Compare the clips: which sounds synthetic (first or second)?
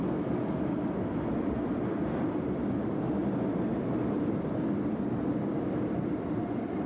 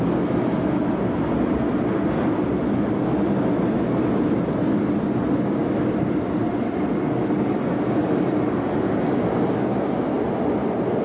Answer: first